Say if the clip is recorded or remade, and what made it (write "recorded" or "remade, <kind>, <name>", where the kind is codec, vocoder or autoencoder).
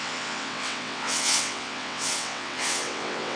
remade, vocoder, WaveNeXt